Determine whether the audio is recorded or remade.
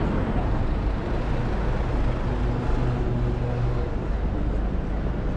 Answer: recorded